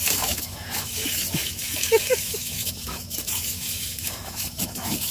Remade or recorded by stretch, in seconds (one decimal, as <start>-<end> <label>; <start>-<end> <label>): 0.0-5.1 remade